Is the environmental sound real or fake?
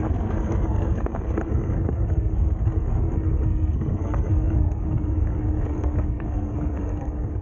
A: fake